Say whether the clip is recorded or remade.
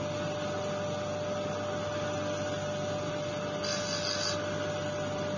recorded